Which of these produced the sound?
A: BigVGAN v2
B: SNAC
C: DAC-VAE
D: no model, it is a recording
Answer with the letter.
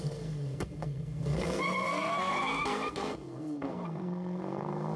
B